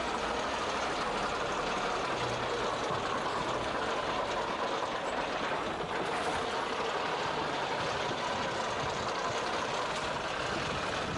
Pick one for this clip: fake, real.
real